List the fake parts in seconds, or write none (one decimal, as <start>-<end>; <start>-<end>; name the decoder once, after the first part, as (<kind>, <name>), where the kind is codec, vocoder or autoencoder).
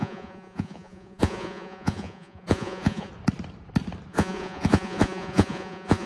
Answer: 0.0-3.1 (vocoder, Vocos); 4.1-6.1